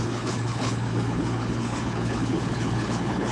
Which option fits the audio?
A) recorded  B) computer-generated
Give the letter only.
B